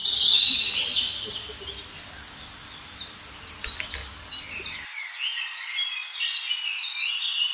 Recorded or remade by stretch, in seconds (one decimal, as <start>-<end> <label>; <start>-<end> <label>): 0.0-1.3 remade; 1.3-7.5 recorded